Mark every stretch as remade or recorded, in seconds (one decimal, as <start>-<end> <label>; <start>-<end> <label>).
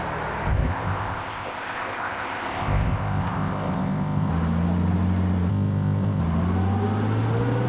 0.0-0.5 recorded; 0.5-4.3 remade; 4.3-5.5 recorded; 5.5-6.2 remade; 6.2-7.7 recorded